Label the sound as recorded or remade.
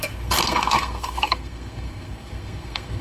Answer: remade